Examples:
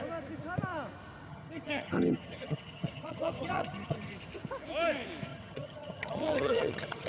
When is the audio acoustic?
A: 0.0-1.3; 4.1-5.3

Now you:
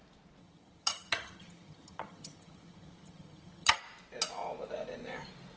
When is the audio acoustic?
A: 0.0-0.4; 3.8-5.6

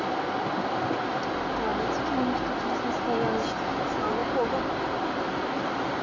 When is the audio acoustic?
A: 0.0-6.0